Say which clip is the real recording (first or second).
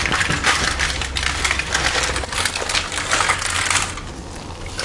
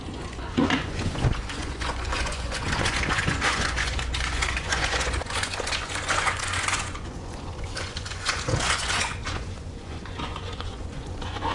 first